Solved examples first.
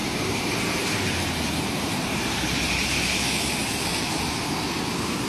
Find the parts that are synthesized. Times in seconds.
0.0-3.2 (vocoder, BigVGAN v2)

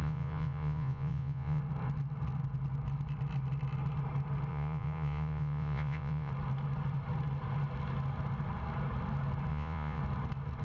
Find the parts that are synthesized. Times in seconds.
0.0-1.6 (vocoder, Vocos); 4.5-6.3; 9.5-10.0

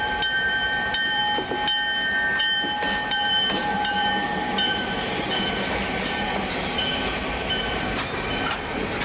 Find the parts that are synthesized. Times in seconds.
0.0-1.2 (vocoder, BigVGAN v2); 2.4-9.0

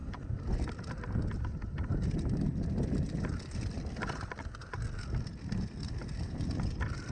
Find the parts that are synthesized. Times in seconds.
0.0-0.7 (vocoder, BigVGAN v2)

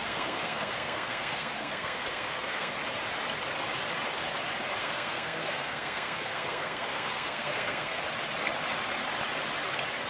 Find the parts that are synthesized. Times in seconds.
0.0-2.7 (codec, SNAC); 4.8-8.0

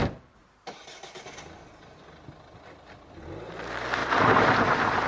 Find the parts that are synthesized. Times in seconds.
4.0-5.1 (vocoder, BigVGAN v2)